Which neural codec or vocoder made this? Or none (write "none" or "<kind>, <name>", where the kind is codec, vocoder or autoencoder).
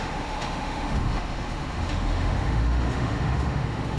autoencoder, DAC-VAE